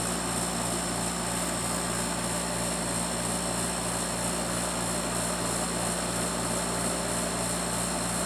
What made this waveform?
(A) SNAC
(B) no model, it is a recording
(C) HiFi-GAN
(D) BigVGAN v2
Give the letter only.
B